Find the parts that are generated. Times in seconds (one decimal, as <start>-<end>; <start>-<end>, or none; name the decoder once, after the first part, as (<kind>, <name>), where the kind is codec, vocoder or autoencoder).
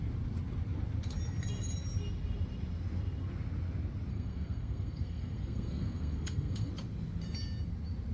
4.1-6.7 (codec, SNAC)